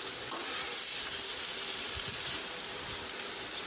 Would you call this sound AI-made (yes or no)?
yes